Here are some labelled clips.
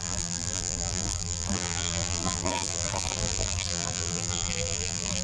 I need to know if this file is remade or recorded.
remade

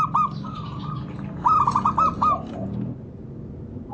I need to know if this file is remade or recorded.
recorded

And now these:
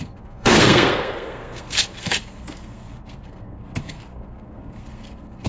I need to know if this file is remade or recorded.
remade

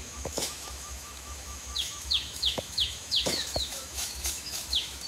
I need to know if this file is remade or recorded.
remade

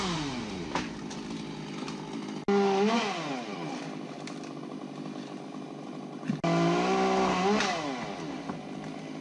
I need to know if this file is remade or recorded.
recorded